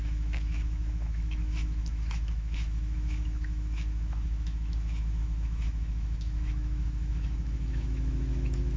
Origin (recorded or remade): remade